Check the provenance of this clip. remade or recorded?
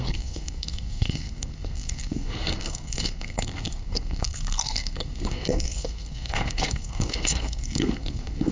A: remade